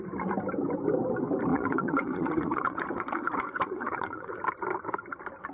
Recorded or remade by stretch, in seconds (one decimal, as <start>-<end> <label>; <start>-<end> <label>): 0.0-1.5 recorded; 1.5-4.3 remade; 4.3-5.5 recorded